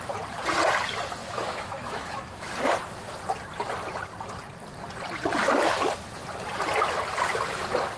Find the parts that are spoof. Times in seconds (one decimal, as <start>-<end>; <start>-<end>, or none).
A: 1.2-2.5

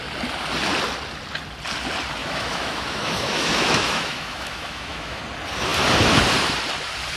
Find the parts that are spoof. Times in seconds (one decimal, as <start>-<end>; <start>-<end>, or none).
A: 2.2-5.2

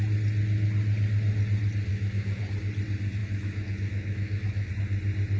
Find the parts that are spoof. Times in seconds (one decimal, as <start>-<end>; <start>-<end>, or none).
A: 1.9-2.4; 3.2-4.7

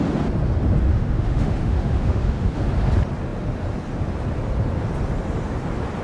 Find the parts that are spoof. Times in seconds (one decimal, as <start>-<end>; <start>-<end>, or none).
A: 0.9-2.6

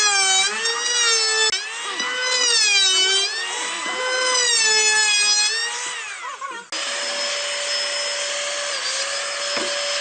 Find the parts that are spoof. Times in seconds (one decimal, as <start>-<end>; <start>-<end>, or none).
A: none

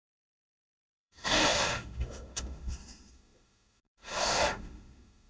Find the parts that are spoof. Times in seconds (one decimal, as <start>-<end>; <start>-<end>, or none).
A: 0.0-5.3

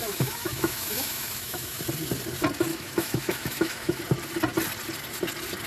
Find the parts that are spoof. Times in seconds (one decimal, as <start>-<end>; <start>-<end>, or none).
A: 0.0-1.8; 2.7-4.0

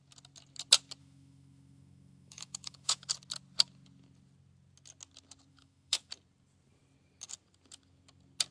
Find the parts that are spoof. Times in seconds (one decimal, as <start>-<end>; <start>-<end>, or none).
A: 1.0-3.1; 5.5-6.1